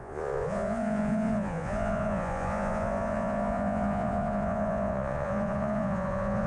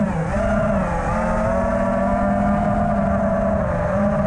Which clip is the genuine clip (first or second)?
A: second